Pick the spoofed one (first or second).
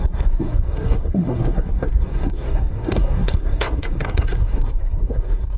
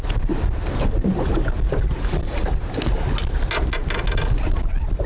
first